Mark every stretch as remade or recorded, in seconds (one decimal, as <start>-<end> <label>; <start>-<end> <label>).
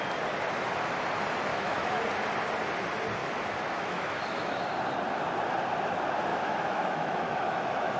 0.0-1.5 recorded; 1.5-2.0 remade; 2.0-3.2 recorded; 3.2-4.6 remade; 4.6-6.3 recorded; 6.3-8.0 remade